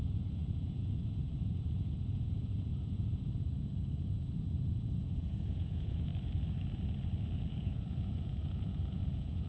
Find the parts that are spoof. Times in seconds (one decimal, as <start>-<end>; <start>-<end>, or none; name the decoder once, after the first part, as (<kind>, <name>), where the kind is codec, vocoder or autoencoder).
0.0-6.1 (vocoder, Vocos); 7.5-9.5